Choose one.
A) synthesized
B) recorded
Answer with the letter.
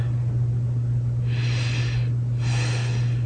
B